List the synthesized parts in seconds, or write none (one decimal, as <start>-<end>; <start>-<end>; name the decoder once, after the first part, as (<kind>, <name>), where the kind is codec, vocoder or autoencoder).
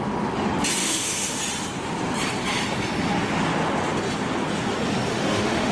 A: 0.8-1.4 (autoencoder, DAC-VAE); 5.1-5.7